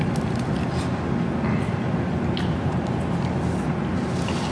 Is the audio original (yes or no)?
yes